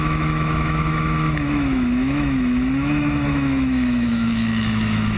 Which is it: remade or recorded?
remade